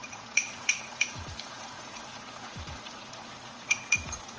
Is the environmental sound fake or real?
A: fake